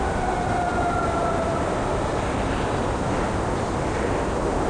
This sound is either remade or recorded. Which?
recorded